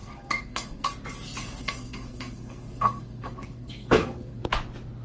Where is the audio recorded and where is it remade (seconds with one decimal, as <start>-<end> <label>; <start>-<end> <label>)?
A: 0.0-0.9 remade; 0.9-1.4 recorded; 1.4-4.4 remade; 4.4-5.0 recorded